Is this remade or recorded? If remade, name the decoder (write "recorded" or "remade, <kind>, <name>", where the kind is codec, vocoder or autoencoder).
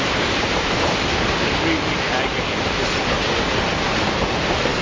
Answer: recorded